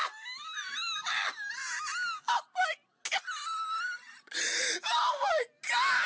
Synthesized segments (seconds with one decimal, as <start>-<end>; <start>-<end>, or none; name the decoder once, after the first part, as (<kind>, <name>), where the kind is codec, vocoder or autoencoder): 0.0-1.5 (vocoder, BigVGAN v2)